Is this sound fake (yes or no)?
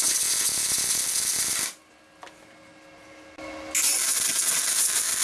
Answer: no